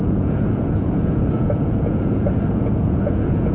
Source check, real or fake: fake